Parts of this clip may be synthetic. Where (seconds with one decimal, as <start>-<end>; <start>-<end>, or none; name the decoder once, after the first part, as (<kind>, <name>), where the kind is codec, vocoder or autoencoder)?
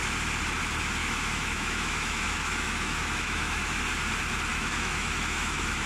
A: 1.0-3.8 (autoencoder, DAC-VAE); 4.5-5.9